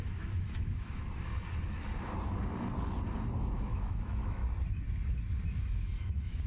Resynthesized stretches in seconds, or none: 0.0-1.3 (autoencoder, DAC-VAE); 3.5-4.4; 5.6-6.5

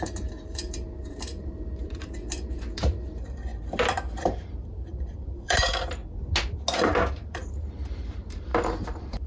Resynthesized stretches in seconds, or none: 0.0-3.5 (vocoder, BigVGAN v2); 4.2-6.0; 7.1-9.3

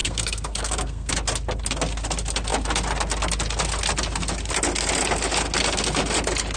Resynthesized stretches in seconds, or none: 0.0-1.1 (codec, SNAC)

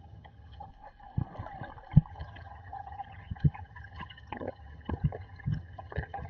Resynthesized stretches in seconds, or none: 0.0-0.7 (vocoder, HiFi-GAN); 2.1-6.3

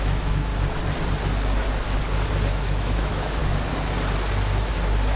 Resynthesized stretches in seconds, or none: 0.0-0.5 (autoencoder, DAC-VAE); 2.5-3.4